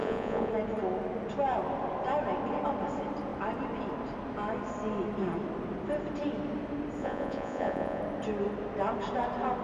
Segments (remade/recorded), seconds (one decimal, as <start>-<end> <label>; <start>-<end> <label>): 0.0-0.5 remade; 0.5-7.0 recorded; 7.0-8.0 remade; 8.0-9.6 recorded